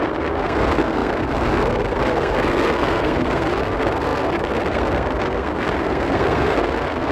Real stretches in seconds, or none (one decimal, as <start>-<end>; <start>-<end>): none